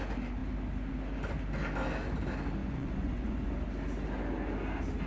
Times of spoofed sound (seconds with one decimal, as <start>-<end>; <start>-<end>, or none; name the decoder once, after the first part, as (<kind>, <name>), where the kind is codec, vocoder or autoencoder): 2.6-3.5 (vocoder, Vocos)